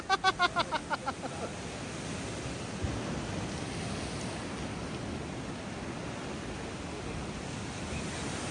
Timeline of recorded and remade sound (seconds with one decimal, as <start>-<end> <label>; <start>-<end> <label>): 0.0-8.5 recorded